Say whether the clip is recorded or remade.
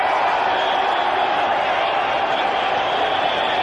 recorded